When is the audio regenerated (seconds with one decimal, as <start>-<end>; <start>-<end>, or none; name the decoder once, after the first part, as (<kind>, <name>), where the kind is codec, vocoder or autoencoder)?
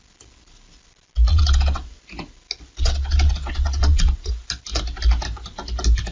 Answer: 1.3-2.0 (vocoder, WaveNeXt); 2.8-4.3